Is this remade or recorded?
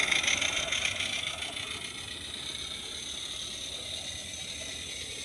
recorded